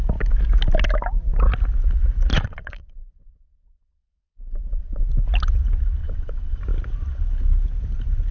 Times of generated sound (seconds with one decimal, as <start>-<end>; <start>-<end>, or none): 2.3-5.0; 6.0-6.6